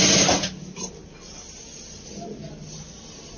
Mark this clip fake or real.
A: real